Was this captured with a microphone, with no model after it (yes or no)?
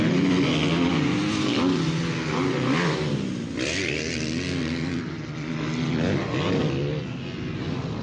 yes